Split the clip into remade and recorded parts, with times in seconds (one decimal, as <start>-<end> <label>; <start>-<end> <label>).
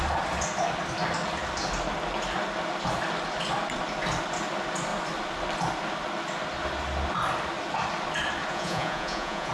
0.0-8.5 recorded; 8.5-9.5 remade